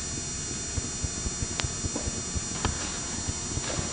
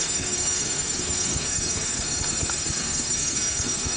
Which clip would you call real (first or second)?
first